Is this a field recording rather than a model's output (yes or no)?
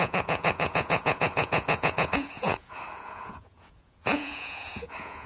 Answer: no